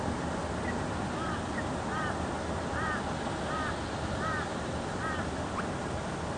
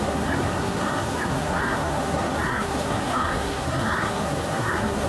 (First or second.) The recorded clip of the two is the first